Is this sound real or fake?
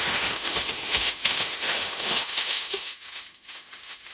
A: fake